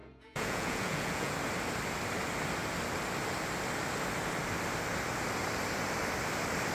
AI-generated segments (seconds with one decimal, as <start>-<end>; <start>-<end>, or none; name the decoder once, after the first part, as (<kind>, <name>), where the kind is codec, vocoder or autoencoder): 0.0-1.3 (vocoder, Vocos)